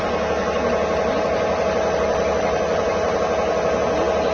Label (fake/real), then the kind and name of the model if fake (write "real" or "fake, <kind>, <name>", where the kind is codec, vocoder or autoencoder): real